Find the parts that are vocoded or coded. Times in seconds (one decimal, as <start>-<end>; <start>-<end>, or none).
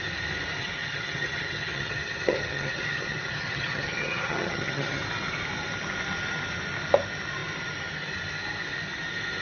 0.6-5.0